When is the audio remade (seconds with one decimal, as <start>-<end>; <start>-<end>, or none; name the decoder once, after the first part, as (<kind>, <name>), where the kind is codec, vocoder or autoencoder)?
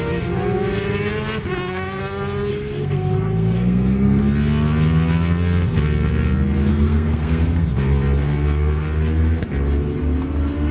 1.5-2.0 (codec, SNAC); 2.5-4.2; 6.7-7.7